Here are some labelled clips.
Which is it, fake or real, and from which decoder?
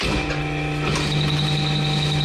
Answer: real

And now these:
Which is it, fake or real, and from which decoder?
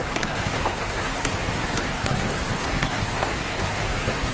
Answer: fake, codec, SNAC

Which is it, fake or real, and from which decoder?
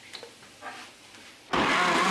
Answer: real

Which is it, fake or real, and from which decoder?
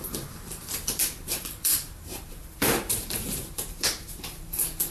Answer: fake, vocoder, BigVGAN v2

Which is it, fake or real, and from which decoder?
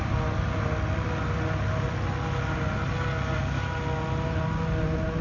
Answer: real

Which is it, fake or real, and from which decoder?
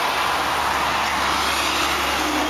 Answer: real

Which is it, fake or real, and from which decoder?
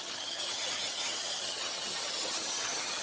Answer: fake, vocoder, HiFi-GAN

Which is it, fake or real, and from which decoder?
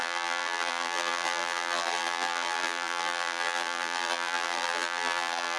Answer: fake, vocoder, BigVGAN v2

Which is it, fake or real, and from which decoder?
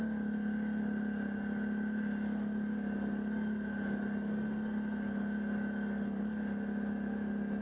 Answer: real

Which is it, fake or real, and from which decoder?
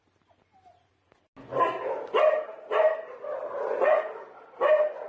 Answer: real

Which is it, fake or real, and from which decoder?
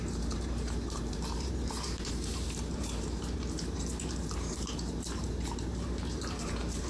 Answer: fake, vocoder, BigVGAN v2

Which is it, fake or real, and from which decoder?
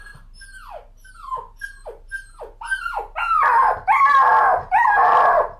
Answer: real